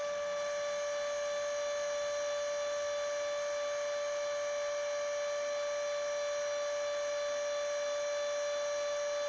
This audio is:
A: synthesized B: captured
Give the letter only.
B